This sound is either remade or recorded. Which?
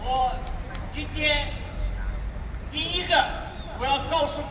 remade